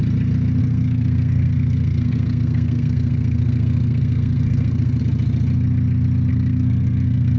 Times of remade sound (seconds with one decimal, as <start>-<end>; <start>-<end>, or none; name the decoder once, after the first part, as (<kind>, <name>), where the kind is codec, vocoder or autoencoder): 0.6-5.0 (codec, SNAC); 6.3-7.4